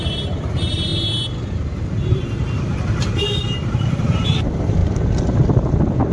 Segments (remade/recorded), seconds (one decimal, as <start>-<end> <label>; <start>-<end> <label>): 0.0-0.9 remade; 0.9-2.1 recorded; 2.1-4.8 remade; 4.8-6.1 recorded